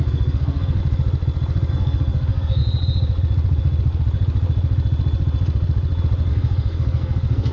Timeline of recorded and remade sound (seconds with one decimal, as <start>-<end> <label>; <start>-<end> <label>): 0.0-0.8 remade; 0.8-1.7 recorded; 1.7-2.6 remade; 2.6-6.3 recorded; 6.3-7.5 remade